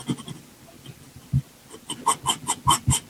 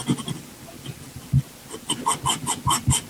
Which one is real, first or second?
first